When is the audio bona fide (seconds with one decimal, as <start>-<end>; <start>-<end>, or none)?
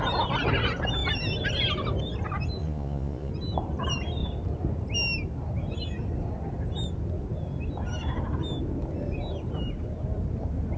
0.0-2.6; 3.3-10.8